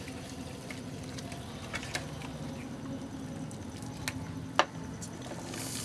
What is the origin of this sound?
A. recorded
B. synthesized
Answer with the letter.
A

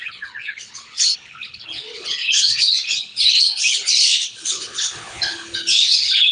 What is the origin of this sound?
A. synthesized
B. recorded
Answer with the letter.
A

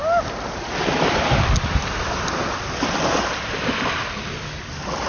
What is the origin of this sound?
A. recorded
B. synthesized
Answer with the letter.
A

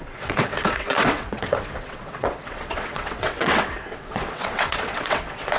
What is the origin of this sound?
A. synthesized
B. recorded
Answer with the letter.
A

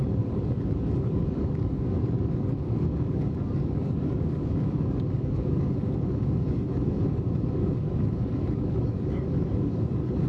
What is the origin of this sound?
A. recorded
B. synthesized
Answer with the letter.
B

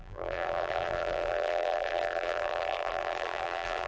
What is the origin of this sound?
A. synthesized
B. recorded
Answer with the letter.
A